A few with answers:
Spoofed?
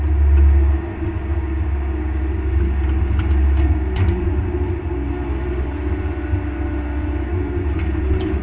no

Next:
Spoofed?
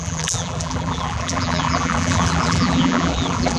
yes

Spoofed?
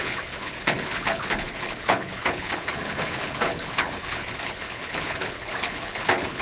yes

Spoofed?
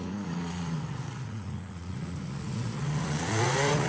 yes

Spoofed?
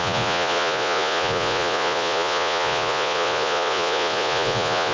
yes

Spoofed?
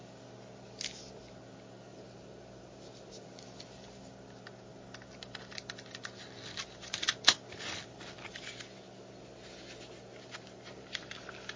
no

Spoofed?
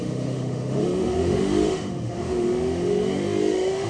yes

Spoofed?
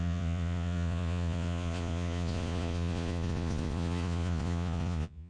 yes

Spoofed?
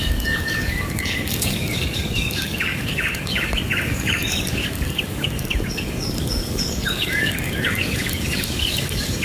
yes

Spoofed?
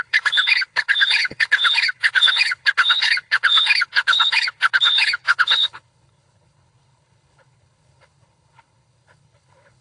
yes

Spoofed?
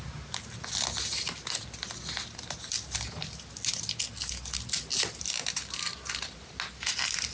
no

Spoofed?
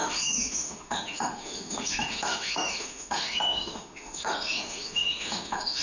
yes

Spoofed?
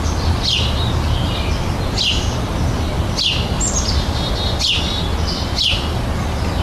no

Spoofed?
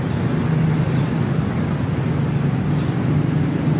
no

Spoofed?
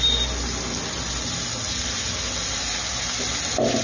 no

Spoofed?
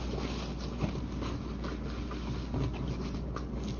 no